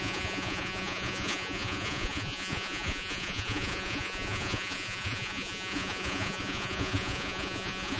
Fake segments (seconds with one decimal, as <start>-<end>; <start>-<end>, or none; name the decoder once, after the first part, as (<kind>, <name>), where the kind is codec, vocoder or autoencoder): 0.0-8.0 (vocoder, Vocos)